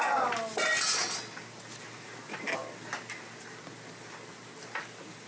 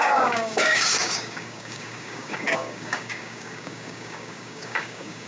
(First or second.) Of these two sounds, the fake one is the second